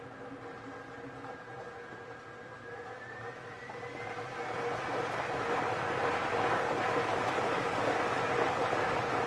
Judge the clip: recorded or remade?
recorded